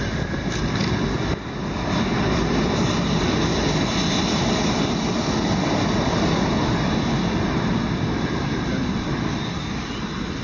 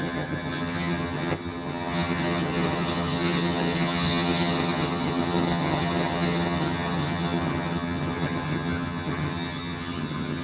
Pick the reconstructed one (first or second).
second